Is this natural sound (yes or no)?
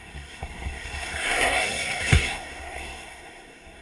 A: no